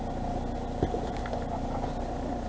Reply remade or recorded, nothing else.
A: recorded